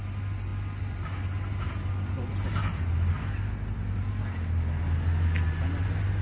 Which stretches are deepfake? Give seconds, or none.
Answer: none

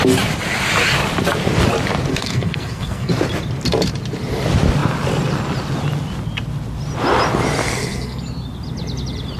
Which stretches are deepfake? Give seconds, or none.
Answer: 2.1-3.1 (codec, SNAC); 7.6-8.2